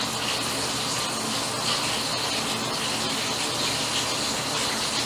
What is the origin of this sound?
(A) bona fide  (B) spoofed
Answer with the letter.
A